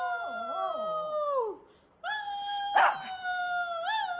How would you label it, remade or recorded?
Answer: recorded